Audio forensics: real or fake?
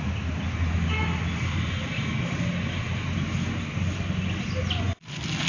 real